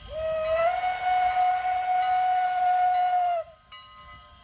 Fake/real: real